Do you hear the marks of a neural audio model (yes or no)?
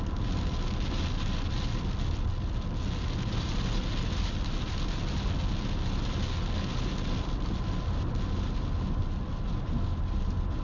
no